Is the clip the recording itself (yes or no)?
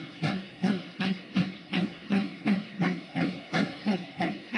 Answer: no